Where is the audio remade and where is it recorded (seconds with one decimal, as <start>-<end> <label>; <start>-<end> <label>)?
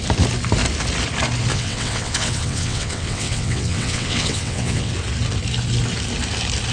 0.0-1.5 recorded; 1.5-4.9 remade; 4.9-6.7 recorded